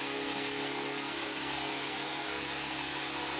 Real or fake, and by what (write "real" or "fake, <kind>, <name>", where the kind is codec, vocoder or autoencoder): fake, codec, SNAC